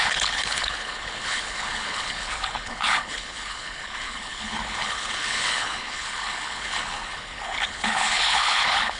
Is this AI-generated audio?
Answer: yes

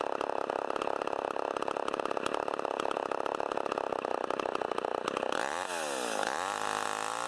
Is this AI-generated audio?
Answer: no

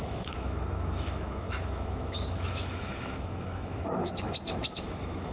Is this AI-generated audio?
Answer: yes